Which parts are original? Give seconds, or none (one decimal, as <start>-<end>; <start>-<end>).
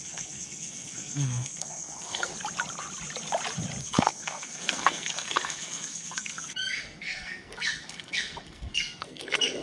2.3-3.8